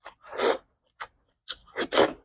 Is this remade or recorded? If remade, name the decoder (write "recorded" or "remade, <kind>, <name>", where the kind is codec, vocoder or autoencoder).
recorded